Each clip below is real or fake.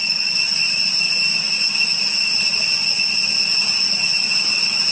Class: real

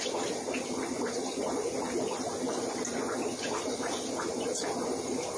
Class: real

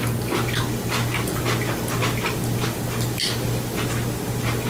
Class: real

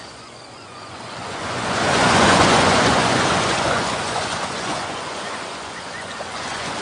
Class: fake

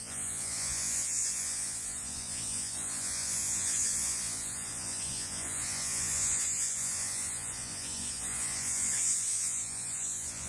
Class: fake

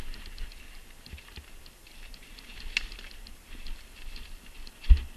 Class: real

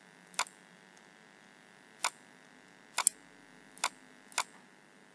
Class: real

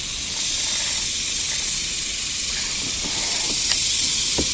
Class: real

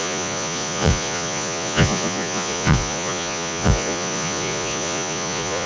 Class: fake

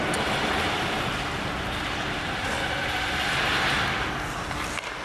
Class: real